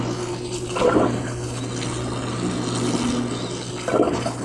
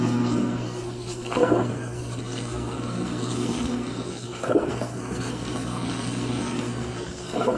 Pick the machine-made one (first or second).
second